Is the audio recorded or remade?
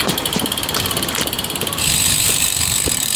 remade